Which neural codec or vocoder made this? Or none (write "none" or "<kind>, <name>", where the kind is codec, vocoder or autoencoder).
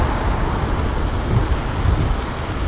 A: none